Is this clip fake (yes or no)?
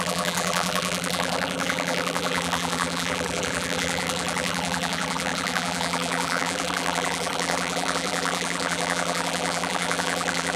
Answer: yes